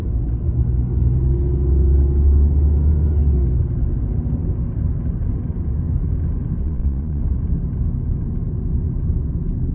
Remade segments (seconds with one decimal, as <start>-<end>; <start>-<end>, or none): 6.6-7.2